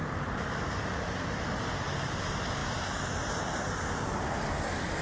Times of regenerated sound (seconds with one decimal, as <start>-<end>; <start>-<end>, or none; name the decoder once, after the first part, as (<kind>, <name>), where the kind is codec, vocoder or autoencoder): 0.0-1.6 (vocoder, BigVGAN v2)